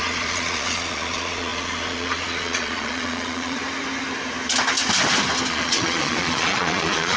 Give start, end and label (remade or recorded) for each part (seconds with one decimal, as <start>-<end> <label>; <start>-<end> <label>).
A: 0.0-3.6 remade; 3.6-5.5 recorded; 5.5-7.2 remade